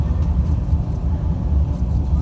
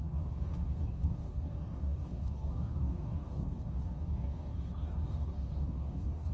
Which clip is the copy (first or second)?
second